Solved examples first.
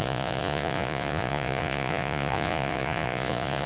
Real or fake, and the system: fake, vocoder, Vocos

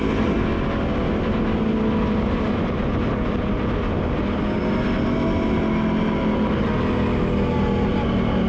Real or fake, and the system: real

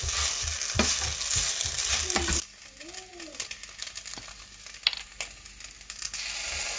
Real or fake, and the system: real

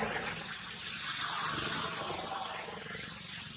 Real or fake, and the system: real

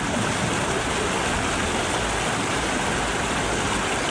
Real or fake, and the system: real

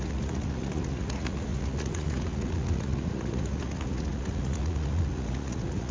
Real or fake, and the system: fake, vocoder, Vocos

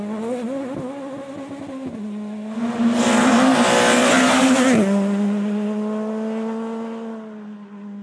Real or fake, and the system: real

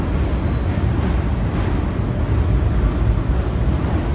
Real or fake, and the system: real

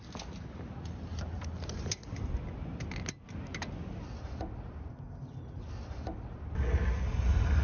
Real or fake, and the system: real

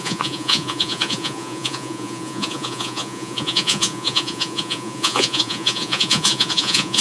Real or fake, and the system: fake, vocoder, Vocos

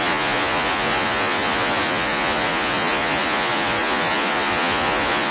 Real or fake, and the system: fake, vocoder, Vocos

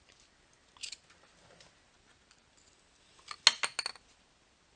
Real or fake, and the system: real